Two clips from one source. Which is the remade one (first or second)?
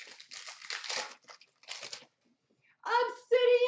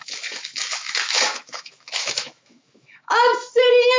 second